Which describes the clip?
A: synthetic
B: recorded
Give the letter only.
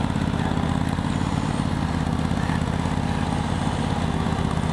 B